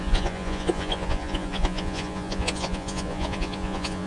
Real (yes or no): no